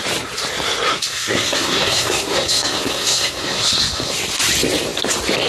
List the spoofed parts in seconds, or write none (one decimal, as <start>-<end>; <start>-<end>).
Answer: 0.9-4.2